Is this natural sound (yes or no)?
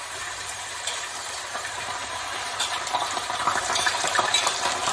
no